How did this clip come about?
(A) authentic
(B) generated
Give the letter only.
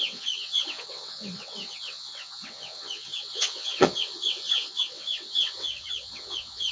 B